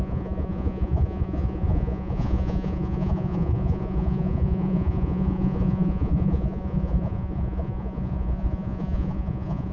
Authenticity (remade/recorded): remade